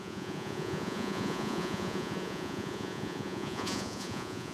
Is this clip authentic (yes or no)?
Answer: no